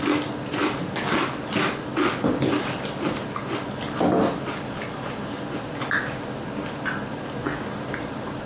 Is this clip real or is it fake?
real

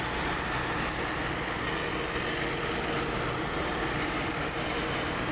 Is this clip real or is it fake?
real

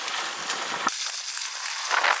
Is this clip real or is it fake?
real